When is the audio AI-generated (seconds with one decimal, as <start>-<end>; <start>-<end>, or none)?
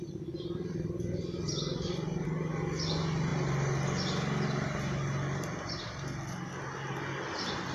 none